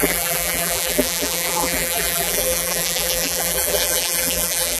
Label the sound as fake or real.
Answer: fake